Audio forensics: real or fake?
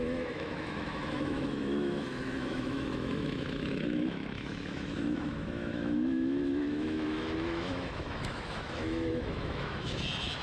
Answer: fake